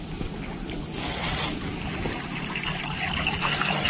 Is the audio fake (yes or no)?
no